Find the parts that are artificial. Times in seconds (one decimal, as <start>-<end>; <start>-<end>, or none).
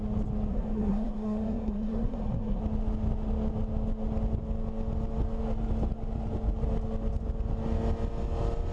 0.5-2.6